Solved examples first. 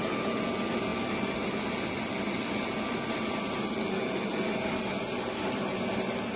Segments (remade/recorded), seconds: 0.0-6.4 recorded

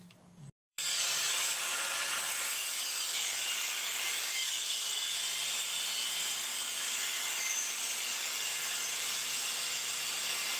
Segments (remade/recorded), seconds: 0.0-5.2 remade; 5.2-6.3 recorded; 6.3-8.5 remade; 8.5-10.6 recorded